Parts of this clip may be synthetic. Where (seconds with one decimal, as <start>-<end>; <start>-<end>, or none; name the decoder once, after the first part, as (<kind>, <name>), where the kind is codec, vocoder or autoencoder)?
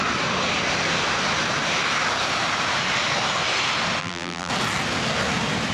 4.0-4.5 (vocoder, BigVGAN v2)